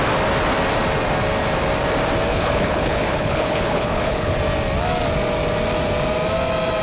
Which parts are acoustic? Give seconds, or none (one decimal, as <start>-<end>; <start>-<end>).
0.0-2.3; 4.4-6.8